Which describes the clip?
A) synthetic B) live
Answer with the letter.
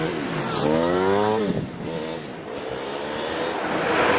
B